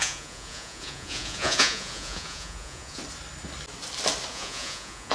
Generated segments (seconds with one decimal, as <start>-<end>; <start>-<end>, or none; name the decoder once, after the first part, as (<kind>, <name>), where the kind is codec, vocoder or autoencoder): 0.0-3.0 (vocoder, Vocos); 4.3-5.1